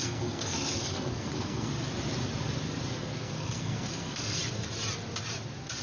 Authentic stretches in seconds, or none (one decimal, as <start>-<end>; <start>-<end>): 1.7-3.0; 4.4-5.8